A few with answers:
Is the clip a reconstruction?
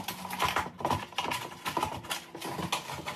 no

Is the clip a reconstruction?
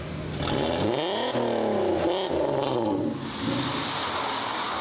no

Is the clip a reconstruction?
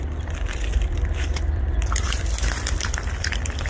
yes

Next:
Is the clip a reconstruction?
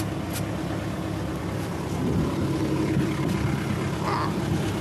no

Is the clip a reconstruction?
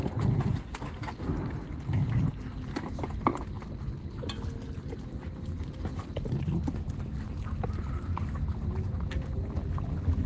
no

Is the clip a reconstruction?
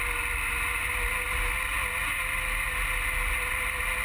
no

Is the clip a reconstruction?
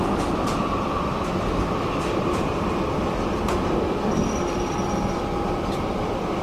yes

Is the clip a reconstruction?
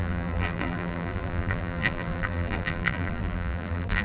yes